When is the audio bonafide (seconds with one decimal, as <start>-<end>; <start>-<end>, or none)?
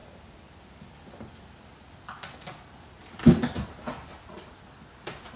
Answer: 0.0-5.4